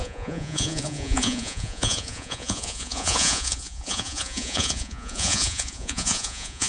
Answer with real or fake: fake